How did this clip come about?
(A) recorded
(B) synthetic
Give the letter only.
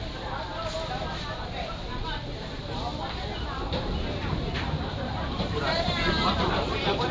B